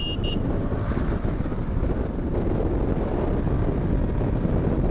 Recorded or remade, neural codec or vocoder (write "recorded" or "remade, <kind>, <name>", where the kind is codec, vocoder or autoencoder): recorded